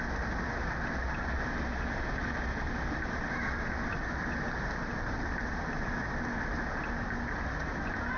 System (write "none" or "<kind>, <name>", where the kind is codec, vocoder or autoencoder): none